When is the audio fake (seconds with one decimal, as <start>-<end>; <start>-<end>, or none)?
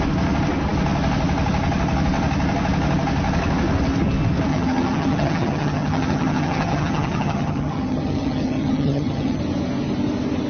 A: 4.5-9.4